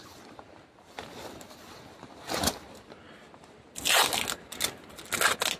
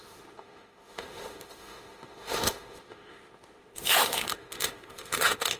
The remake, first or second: second